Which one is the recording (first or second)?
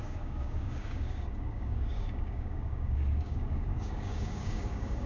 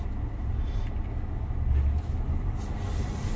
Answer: second